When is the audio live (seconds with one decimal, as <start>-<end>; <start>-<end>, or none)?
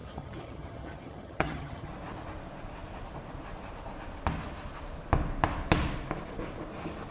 1.9-7.1